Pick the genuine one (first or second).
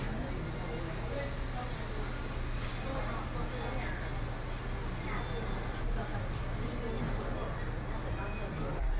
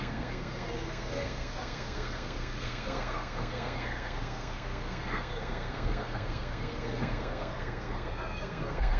first